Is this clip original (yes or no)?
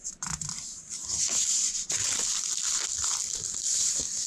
no